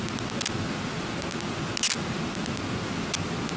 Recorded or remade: recorded